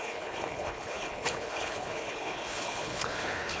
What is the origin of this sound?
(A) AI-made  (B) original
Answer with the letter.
A